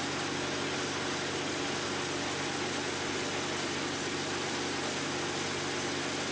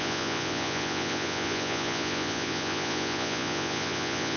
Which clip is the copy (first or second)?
second